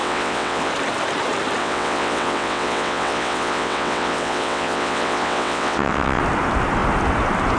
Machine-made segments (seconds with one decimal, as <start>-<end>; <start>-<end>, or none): 0.0-0.7; 1.6-6.2